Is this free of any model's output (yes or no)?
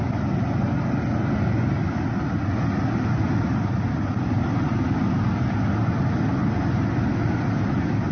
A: yes